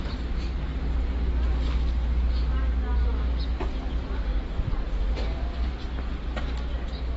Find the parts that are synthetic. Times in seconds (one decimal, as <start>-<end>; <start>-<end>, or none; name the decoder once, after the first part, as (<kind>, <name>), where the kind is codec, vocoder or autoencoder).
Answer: none